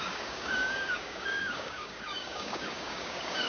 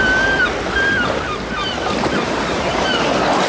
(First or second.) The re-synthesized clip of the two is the first